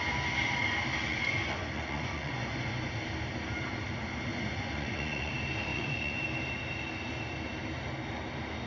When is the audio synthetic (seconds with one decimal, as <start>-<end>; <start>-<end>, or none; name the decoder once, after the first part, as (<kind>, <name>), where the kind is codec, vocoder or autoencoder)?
1.1-2.9 (vocoder, Vocos); 4.3-5.3; 5.7-6.2

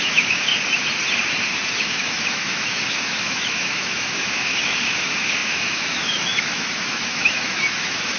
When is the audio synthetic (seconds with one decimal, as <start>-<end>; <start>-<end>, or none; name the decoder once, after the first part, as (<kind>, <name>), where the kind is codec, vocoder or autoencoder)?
0.0-0.5 (autoencoder, DAC-VAE); 1.7-8.2

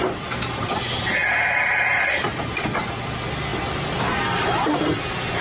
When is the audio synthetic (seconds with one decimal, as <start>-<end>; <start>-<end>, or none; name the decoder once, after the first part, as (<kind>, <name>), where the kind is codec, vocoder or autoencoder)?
none

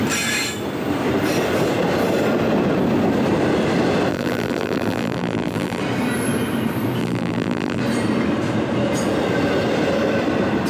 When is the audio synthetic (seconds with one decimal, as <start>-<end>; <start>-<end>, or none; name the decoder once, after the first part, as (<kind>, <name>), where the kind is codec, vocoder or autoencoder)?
4.1-5.8 (vocoder, BigVGAN v2); 7.0-7.8

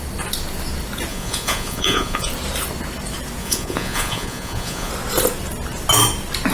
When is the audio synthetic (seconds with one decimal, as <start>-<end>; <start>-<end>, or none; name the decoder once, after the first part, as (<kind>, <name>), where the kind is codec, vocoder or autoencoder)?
1.1-2.3 (vocoder, Vocos); 3.4-4.9

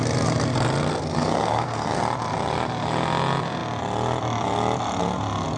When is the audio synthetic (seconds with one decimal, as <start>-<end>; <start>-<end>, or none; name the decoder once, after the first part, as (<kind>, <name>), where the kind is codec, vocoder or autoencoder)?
0.9-2.0 (codec, SNAC)